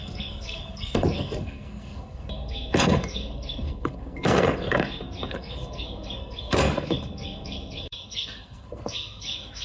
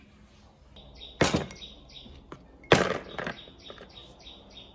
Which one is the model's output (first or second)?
first